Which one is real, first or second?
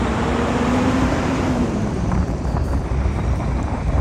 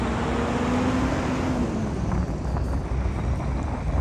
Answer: second